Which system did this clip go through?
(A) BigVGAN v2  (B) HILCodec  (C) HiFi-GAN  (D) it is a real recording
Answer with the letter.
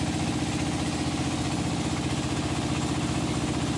D